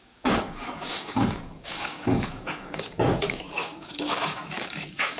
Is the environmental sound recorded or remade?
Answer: remade